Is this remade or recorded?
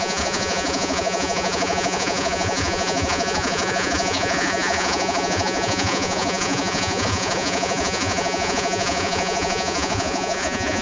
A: remade